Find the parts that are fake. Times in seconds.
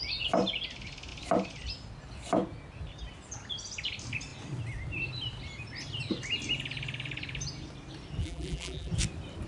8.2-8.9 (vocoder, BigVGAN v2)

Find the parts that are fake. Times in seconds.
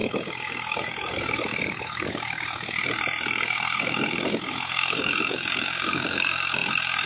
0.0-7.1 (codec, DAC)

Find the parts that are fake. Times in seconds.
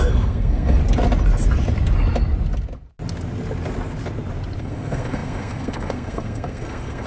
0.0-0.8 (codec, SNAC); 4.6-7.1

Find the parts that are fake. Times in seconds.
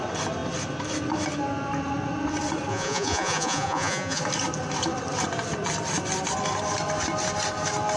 2.7-4.2 (vocoder, Vocos)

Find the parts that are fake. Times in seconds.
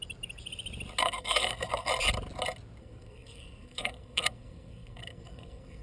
1.0-1.9 (codec, SNAC); 2.8-5.8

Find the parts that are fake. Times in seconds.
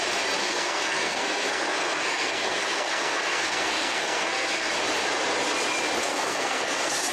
0.4-4.7 (codec, SNAC); 6.0-7.1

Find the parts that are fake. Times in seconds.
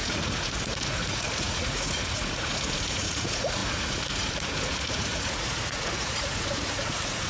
0.0-7.3 (vocoder, Vocos)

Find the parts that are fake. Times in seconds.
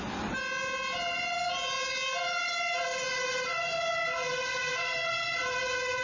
none